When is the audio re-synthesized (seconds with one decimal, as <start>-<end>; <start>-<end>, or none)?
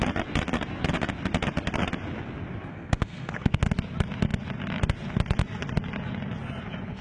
2.7-3.6